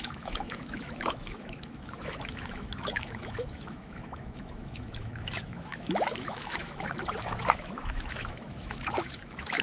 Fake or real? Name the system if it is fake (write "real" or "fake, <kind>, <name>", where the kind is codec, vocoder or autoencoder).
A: fake, autoencoder, DAC-VAE